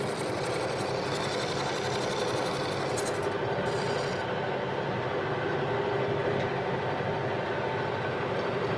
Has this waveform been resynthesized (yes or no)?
no